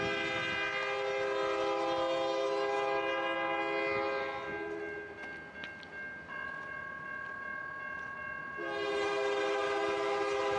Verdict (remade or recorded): recorded